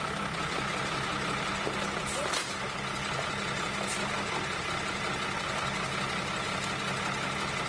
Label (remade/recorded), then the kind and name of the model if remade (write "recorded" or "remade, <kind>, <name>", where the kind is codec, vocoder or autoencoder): recorded